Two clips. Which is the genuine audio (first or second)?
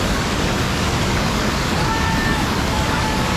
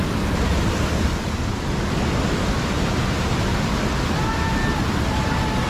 second